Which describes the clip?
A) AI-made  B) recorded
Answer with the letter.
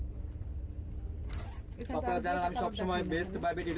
B